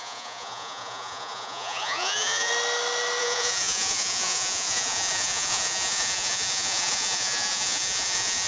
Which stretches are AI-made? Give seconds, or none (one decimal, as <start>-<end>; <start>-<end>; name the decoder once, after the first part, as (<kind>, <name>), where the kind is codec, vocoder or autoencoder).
0.0-2.5 (vocoder, Vocos); 3.2-8.5

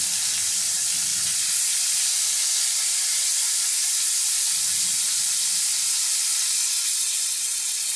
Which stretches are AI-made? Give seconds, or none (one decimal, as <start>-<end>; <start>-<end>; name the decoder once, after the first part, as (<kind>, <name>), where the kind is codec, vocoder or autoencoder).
6.6-8.0 (vocoder, WaveNeXt)

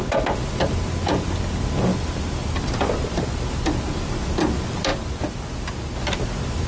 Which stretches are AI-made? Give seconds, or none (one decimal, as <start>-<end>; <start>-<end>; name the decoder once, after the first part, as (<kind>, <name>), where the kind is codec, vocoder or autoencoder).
1.9-2.5 (vocoder, BigVGAN v2)

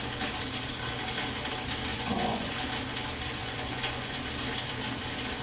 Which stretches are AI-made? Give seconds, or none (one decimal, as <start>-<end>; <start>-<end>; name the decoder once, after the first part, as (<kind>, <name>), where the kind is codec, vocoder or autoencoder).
1.9-2.6 (vocoder, Vocos); 3.4-4.2

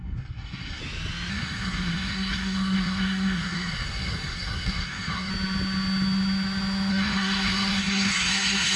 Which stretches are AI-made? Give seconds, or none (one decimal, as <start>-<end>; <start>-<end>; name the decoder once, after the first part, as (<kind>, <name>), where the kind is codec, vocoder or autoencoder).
0.0-0.8 (codec, SNAC); 1.3-5.3; 6.9-8.8

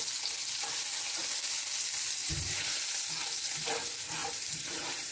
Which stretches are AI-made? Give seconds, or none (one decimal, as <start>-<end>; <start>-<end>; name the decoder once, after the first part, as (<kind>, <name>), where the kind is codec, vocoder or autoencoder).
2.2-2.8 (vocoder, BigVGAN v2); 4.2-5.1

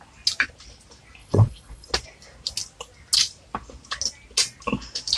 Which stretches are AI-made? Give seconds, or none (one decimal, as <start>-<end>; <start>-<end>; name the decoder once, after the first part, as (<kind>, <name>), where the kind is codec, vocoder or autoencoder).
1.2-1.9 (vocoder, Vocos)